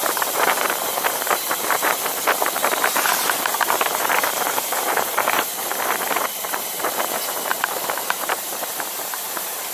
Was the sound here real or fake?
fake